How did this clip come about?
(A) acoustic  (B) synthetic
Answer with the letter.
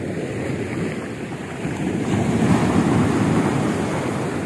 A